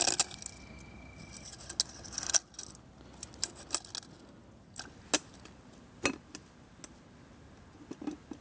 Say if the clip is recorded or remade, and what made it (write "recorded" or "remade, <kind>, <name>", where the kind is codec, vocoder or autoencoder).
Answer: recorded